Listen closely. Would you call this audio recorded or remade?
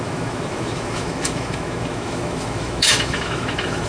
remade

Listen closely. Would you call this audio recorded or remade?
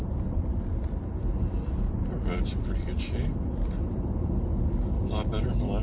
remade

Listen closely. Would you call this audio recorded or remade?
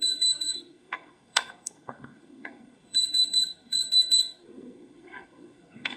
remade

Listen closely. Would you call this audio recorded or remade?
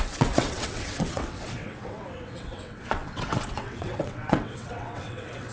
remade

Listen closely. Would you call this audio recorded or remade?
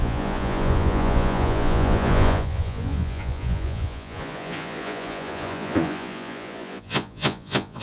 remade